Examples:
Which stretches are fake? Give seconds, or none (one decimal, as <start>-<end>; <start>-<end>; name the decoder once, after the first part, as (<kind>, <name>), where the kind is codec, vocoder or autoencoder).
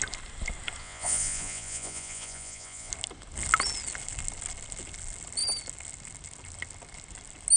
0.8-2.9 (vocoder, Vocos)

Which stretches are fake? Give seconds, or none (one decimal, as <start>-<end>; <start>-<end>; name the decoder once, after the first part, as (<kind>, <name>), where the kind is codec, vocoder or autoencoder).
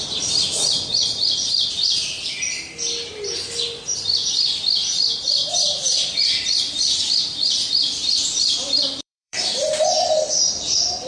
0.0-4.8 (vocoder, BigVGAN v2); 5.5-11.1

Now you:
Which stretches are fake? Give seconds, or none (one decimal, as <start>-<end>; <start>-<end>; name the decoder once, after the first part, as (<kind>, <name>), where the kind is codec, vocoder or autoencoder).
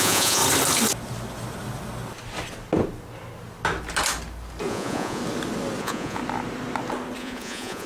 0.0-0.4 (vocoder, Vocos); 4.7-5.2; 5.8-6.2; 7.2-7.9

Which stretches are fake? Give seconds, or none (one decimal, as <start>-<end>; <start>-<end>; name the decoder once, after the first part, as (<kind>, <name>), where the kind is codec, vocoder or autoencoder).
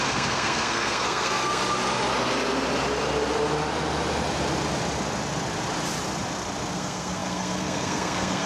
0.0-1.6 (codec, SNAC); 6.7-8.5